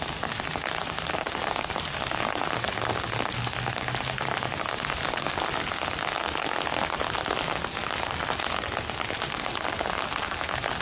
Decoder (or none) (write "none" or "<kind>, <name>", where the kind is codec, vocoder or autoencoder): none